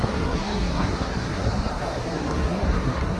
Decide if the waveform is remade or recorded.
remade